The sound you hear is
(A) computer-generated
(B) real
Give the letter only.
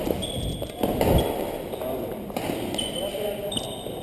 B